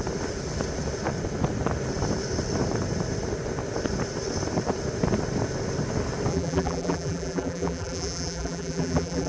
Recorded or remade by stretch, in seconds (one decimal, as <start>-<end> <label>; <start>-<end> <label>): 0.0-6.3 recorded; 6.3-9.3 remade